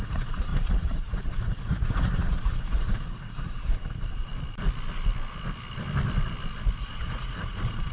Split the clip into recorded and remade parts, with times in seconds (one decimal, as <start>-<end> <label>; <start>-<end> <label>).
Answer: 0.0-4.3 remade; 4.3-6.8 recorded; 6.8-7.9 remade